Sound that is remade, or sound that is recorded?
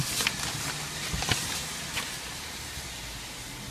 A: recorded